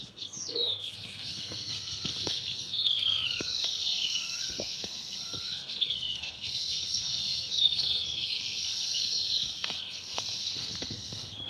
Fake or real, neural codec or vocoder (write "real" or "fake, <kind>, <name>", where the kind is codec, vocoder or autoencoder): fake, codec, SNAC